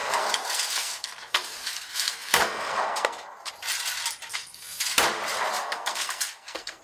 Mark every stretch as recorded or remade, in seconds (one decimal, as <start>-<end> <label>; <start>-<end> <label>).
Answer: 0.0-3.5 remade; 3.5-4.3 recorded; 4.3-5.0 remade; 5.0-5.5 recorded; 5.5-6.8 remade